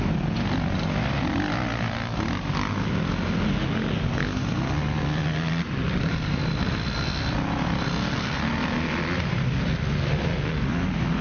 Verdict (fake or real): real